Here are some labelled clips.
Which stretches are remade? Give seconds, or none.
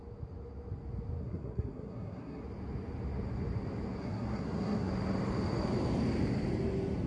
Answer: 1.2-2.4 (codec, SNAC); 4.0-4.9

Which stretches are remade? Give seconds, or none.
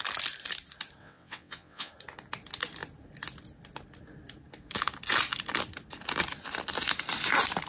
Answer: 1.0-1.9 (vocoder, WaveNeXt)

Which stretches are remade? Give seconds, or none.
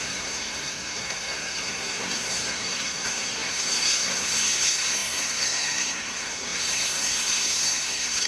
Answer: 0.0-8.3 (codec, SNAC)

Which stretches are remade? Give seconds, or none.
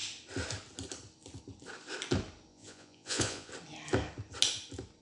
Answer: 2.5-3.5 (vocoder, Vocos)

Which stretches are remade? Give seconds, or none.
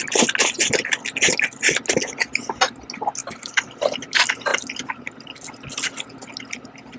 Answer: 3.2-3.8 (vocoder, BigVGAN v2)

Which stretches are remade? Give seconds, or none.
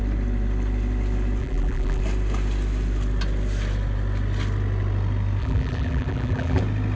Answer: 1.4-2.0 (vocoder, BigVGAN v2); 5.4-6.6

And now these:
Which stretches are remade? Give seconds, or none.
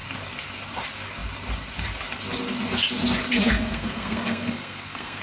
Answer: 3.4-5.2 (codec, SNAC)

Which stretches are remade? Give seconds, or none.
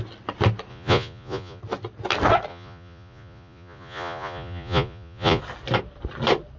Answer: 0.7-1.6 (vocoder, Vocos); 2.5-5.4